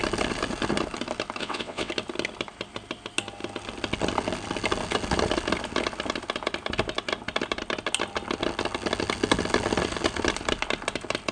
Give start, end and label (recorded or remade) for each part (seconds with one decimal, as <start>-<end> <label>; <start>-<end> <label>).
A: 0.0-1.4 recorded; 1.4-1.9 remade; 1.9-11.3 recorded